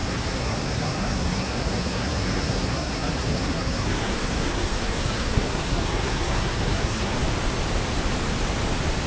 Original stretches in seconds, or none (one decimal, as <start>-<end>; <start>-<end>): 7.2-9.1